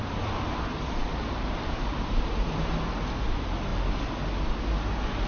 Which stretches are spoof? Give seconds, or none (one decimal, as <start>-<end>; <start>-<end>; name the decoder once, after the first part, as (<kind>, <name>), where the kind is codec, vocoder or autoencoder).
1.0-2.6 (vocoder, BigVGAN v2)